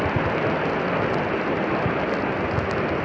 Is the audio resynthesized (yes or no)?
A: no